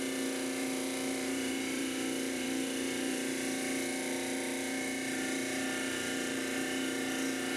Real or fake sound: fake